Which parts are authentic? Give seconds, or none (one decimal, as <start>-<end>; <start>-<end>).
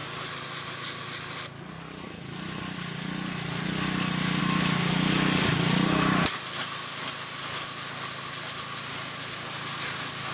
0.0-5.5; 6.3-10.3